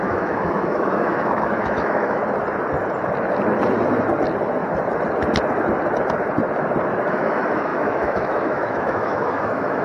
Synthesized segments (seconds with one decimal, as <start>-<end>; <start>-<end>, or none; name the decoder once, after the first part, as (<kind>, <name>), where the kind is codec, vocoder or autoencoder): 0.0-2.2 (autoencoder, DAC-VAE); 7.1-9.8